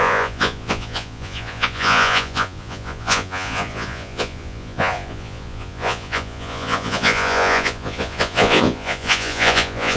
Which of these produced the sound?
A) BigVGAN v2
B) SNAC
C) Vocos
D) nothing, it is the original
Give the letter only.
C